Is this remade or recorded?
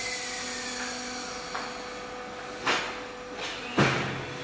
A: recorded